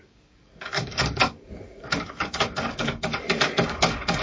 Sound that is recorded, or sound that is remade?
remade